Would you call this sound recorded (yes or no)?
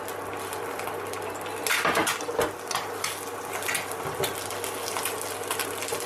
yes